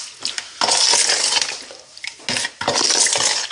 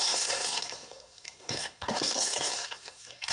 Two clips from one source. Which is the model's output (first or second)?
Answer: second